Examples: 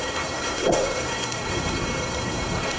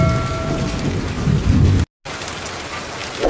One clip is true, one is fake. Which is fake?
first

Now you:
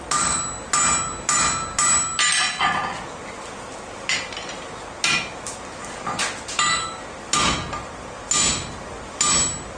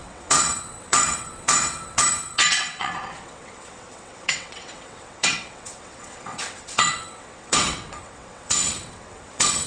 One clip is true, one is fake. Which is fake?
second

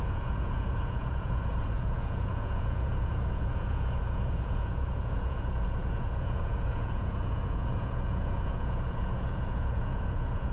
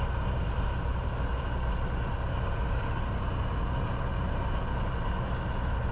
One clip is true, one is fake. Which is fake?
first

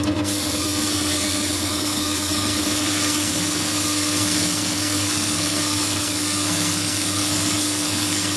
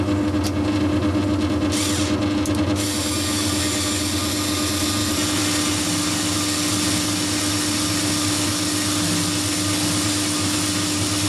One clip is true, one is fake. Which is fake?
first